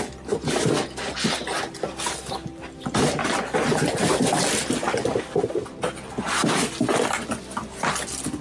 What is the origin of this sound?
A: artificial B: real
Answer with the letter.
B